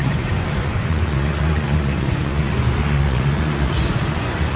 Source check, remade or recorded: remade